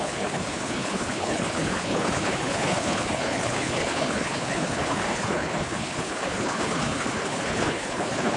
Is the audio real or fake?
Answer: fake